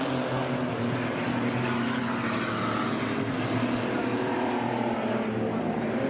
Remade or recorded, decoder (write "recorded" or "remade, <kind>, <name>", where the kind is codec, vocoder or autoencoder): recorded